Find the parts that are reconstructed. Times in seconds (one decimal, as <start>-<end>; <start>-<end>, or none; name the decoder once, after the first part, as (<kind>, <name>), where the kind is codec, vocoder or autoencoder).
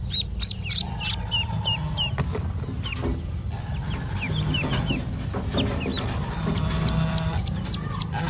none